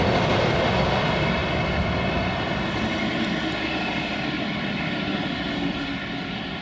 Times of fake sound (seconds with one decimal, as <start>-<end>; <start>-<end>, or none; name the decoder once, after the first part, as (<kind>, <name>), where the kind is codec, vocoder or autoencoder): none

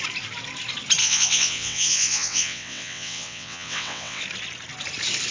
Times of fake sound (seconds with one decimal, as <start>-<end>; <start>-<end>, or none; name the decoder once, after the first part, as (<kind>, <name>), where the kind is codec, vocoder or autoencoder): 1.0-4.2 (vocoder, WaveNeXt)

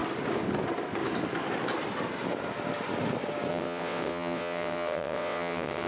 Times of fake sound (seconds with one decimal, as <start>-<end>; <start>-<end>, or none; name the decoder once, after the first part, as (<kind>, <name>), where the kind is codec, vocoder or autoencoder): 3.5-5.9 (vocoder, WaveNeXt)

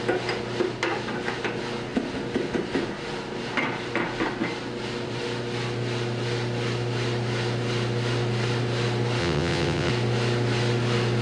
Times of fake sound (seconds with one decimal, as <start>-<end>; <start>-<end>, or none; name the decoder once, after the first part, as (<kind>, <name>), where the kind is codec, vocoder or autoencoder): 9.2-9.9 (vocoder, WaveNeXt)